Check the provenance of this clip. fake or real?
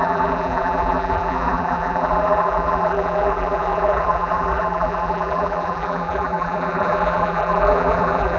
fake